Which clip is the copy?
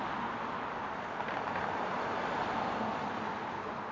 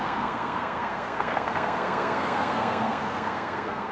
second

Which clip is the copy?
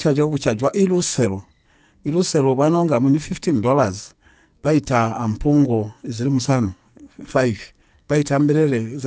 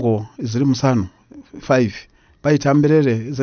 first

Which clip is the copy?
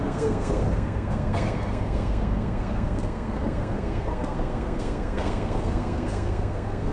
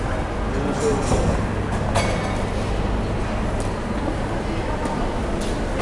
first